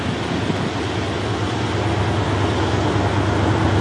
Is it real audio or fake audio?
real